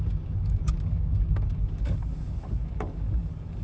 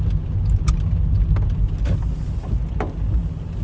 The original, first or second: second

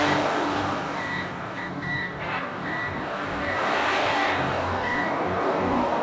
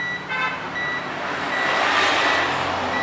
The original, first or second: second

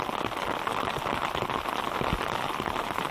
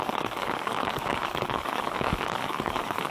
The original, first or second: first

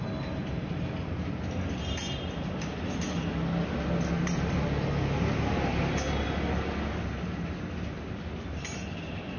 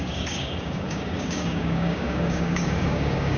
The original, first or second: first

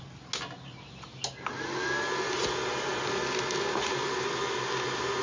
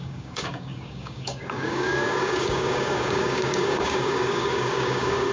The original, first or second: first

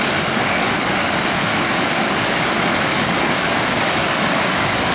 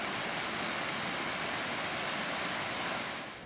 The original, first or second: second